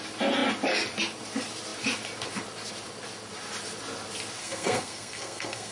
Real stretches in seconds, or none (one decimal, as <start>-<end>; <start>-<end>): 0.0-4.4